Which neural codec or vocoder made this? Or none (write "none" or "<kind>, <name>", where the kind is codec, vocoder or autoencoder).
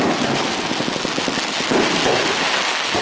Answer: none